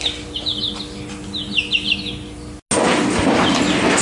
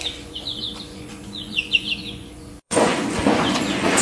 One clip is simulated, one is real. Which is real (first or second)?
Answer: first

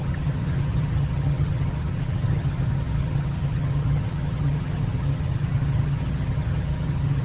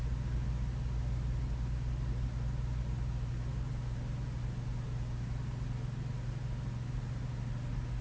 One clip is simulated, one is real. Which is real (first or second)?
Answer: second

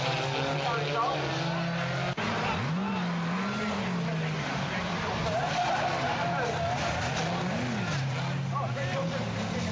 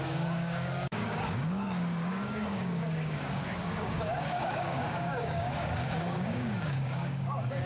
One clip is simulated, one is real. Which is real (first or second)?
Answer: first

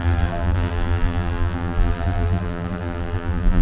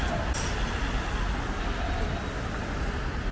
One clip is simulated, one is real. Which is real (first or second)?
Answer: second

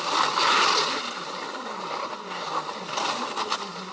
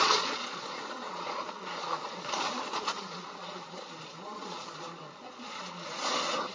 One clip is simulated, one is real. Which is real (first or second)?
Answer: first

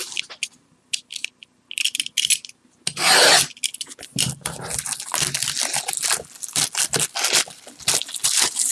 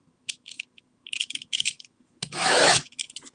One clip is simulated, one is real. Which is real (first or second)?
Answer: first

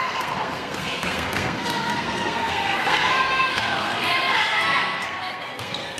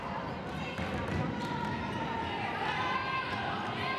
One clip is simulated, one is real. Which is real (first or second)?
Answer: second